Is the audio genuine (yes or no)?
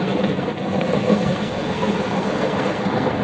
no